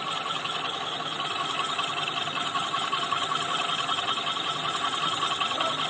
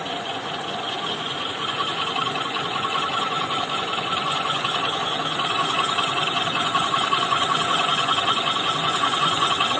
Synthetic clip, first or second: second